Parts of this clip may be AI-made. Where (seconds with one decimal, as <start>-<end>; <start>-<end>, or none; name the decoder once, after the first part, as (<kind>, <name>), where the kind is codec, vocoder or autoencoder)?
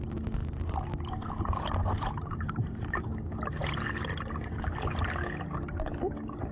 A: none